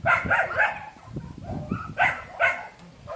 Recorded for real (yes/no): yes